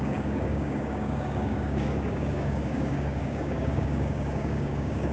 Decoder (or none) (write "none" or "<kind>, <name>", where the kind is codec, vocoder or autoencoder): codec, DAC